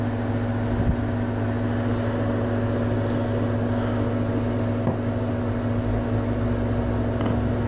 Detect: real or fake real